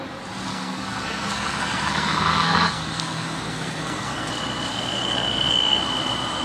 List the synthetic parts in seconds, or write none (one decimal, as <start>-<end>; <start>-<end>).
0.5-4.3; 4.7-5.8